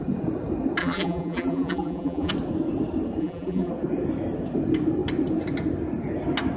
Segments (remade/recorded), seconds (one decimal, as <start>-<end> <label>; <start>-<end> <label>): 0.0-0.8 recorded; 0.8-2.3 remade; 2.3-3.2 recorded; 3.2-3.7 remade; 3.7-6.6 recorded